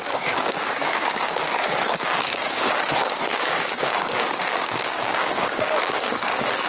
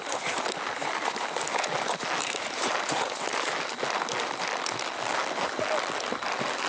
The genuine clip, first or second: second